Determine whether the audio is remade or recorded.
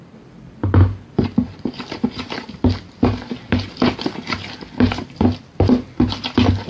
remade